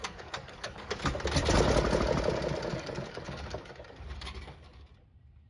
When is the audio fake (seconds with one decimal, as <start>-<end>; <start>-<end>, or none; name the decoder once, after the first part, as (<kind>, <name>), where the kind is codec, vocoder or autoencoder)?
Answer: 0.0-1.0 (codec, DAC); 2.7-4.9